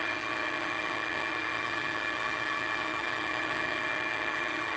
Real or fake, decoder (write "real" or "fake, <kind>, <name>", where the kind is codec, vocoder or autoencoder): fake, vocoder, HiFi-GAN